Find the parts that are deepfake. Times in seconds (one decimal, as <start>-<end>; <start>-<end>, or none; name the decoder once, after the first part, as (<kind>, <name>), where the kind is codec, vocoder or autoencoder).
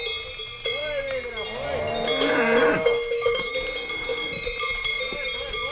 2.6-3.5 (autoencoder, DAC-VAE)